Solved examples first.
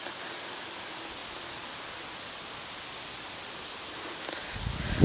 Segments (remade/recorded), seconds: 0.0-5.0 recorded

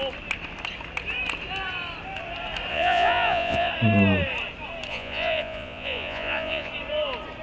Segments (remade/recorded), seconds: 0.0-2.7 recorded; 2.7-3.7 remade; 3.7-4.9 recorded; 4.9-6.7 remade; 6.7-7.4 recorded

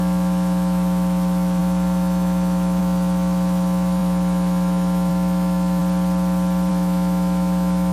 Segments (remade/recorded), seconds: 0.0-5.8 remade; 5.8-6.7 recorded; 6.7-7.9 remade

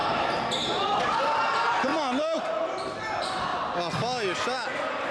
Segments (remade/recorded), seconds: 0.0-1.9 remade; 1.9-2.6 recorded; 2.6-3.5 remade; 3.5-5.1 recorded

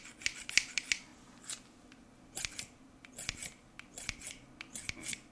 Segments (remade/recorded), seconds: 0.0-5.3 recorded